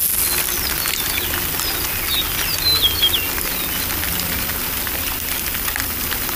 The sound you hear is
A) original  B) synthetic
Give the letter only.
A